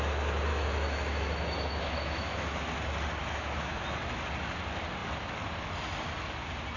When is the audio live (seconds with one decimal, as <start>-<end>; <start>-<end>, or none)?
0.0-0.5; 2.6-3.2; 4.0-6.8